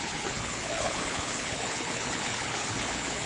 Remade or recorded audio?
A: remade